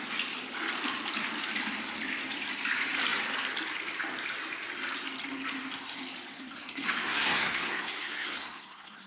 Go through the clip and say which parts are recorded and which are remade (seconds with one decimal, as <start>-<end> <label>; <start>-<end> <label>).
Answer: 0.0-6.3 recorded; 6.3-9.1 remade